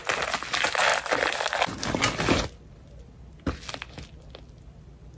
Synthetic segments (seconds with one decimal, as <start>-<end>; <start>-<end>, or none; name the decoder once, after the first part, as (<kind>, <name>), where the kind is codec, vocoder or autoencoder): 0.9-1.6 (vocoder, BigVGAN v2)